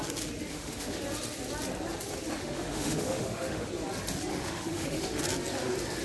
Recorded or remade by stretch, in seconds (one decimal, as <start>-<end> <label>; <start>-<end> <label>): 0.0-0.5 recorded; 0.5-1.0 remade; 1.0-2.4 recorded; 2.4-3.7 remade; 3.7-4.3 recorded; 4.3-5.2 remade; 5.2-6.0 recorded